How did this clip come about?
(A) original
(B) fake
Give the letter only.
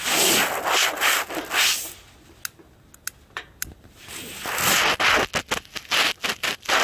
A